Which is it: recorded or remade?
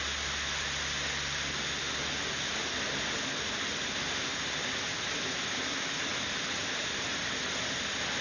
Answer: recorded